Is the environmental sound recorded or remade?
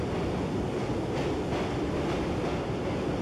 recorded